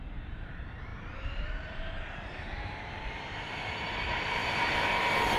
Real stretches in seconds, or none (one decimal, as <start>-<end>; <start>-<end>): 4.4-4.9